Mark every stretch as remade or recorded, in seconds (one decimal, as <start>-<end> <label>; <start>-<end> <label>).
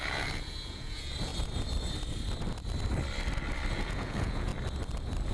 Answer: 0.0-1.3 remade; 1.3-3.7 recorded; 3.7-4.5 remade; 4.5-5.3 recorded